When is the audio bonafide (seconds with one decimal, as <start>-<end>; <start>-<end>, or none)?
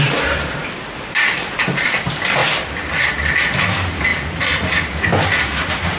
2.4-3.1; 4.1-4.9